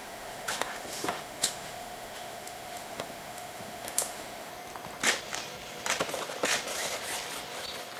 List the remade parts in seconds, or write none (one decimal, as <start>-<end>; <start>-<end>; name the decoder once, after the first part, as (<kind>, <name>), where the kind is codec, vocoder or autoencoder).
0.0-4.5 (autoencoder, DAC-VAE)